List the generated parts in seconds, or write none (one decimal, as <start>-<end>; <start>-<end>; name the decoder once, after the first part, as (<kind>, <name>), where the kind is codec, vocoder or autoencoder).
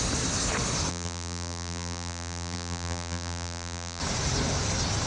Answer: 0.9-4.0 (vocoder, BigVGAN v2)